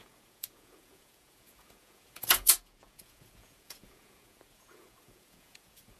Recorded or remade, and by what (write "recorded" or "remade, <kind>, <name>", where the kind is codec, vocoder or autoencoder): remade, vocoder, Vocos